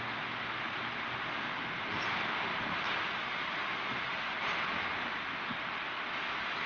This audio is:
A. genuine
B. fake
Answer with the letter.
A